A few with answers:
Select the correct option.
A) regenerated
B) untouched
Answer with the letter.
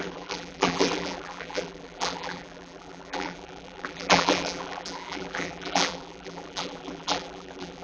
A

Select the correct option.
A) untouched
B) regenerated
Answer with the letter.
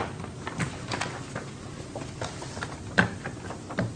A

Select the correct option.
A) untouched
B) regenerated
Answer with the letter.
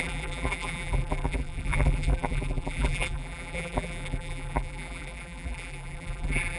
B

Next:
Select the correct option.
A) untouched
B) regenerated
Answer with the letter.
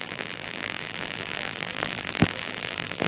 B